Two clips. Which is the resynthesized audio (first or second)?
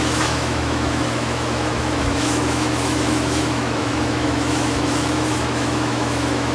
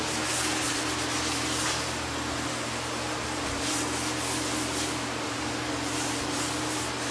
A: first